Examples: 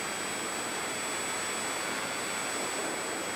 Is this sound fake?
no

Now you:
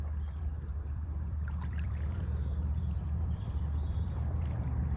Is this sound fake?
yes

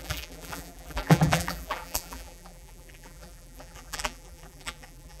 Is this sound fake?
yes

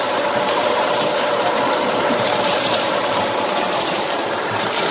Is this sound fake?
yes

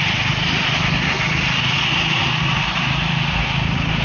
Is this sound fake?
yes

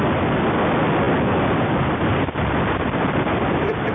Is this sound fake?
no